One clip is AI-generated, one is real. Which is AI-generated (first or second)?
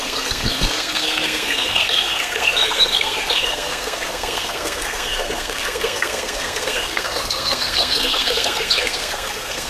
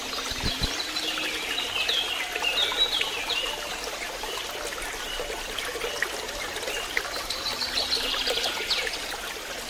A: first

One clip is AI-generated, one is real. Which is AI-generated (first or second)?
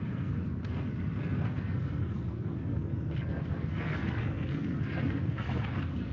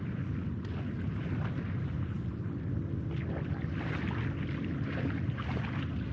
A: first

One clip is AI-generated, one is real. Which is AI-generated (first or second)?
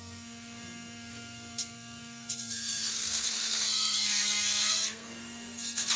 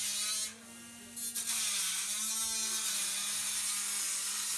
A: first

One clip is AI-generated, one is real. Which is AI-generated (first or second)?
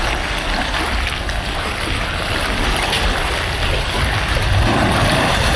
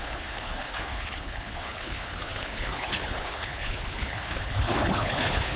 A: second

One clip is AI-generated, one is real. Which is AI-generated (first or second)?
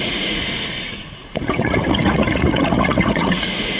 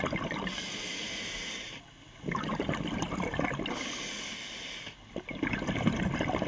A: first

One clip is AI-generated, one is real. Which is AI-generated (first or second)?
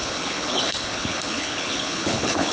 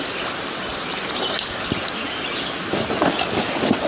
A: first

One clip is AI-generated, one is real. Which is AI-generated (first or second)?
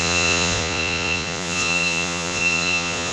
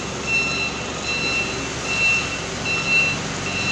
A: first